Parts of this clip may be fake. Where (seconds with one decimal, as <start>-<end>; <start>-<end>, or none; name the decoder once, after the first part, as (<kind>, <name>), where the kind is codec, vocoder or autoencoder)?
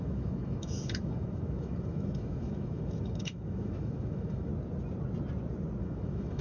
0.0-4.5 (autoencoder, DAC-VAE); 5.8-6.4